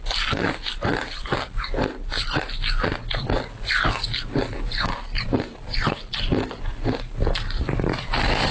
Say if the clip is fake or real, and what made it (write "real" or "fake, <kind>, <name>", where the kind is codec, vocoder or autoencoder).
real